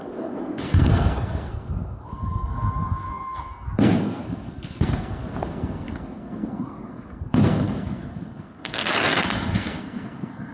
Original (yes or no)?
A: no